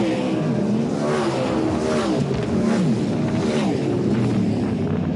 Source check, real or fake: real